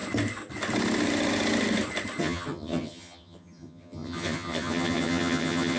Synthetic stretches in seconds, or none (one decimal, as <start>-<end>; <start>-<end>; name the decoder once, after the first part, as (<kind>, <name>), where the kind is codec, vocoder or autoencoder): 2.2-5.8 (vocoder, HiFi-GAN)